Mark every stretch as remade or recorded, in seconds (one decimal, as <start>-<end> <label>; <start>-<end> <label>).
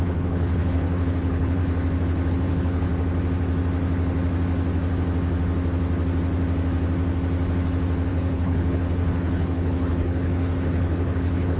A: 0.0-1.6 remade; 1.6-2.3 recorded; 2.3-2.9 remade; 2.9-8.1 recorded; 8.1-11.6 remade